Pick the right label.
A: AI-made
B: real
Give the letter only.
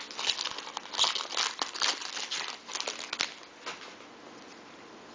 B